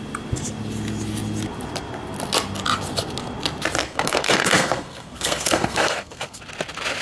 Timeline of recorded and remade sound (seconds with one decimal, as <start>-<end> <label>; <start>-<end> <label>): 0.0-3.8 recorded; 3.8-6.4 remade; 6.4-7.0 recorded